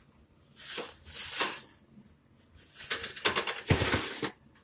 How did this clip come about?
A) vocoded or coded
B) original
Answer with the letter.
B